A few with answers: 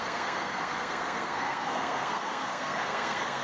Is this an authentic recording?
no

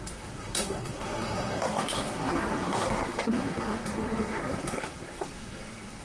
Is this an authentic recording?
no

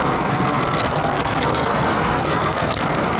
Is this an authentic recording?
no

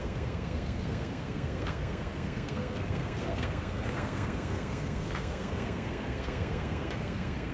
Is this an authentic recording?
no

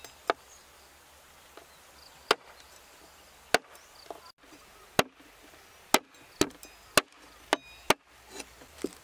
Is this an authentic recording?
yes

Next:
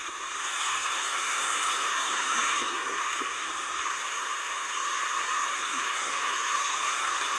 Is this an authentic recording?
no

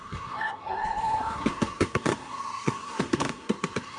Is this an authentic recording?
no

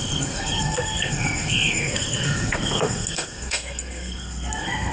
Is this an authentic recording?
no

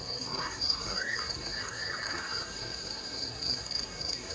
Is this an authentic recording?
no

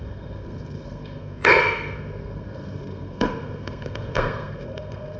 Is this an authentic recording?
no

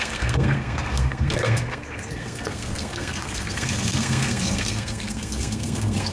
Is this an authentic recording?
no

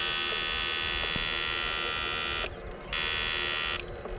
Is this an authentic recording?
yes